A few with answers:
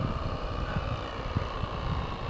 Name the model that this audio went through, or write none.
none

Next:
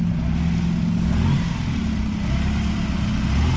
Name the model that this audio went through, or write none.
none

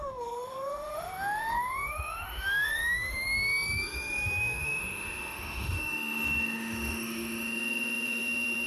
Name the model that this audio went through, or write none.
autoencoder, DAC-VAE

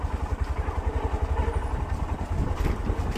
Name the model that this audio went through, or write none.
none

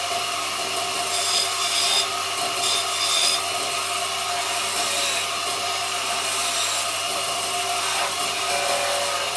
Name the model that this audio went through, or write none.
none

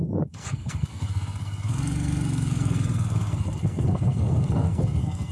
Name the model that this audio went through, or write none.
codec, SNAC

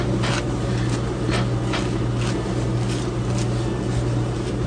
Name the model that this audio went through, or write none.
none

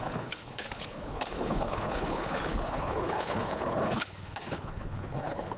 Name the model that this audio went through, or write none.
codec, HILCodec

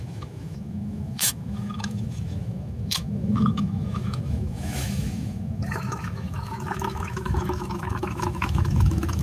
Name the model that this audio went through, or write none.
autoencoder, DAC-VAE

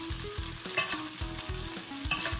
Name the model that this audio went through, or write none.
none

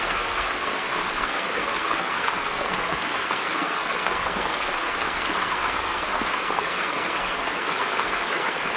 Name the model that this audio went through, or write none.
codec, SNAC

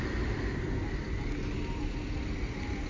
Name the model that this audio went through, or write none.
none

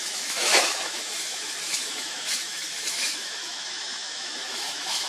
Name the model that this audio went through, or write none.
autoencoder, DAC-VAE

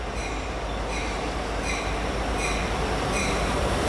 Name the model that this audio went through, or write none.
none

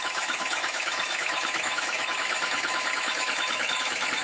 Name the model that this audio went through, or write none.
autoencoder, DAC-VAE